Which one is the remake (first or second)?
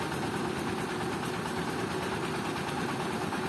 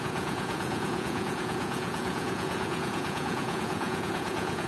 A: second